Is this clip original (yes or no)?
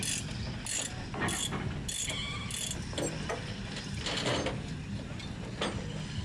yes